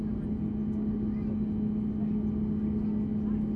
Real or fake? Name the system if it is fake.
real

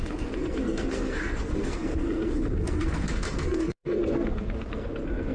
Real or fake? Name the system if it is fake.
fake, codec, SNAC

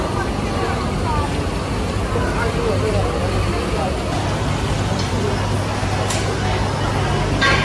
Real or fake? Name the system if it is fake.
real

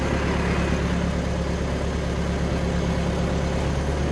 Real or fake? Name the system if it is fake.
real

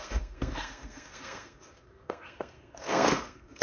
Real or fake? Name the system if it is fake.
fake, codec, SNAC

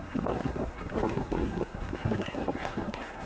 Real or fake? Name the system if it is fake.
fake, codec, SNAC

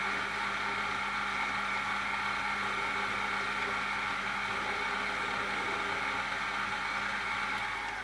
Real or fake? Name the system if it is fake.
real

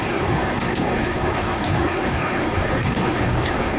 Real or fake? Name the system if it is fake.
fake, codec, SNAC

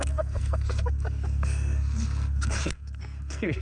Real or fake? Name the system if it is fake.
fake, codec, SNAC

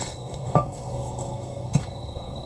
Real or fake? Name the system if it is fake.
fake, codec, SNAC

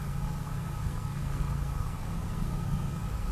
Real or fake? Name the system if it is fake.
fake, codec, SNAC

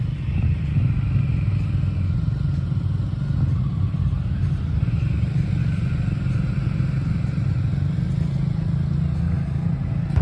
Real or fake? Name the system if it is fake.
real